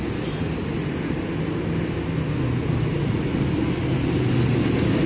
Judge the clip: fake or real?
real